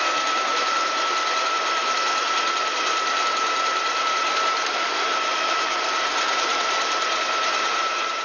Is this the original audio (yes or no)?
no